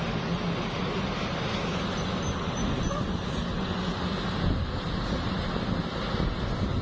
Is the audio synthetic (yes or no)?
no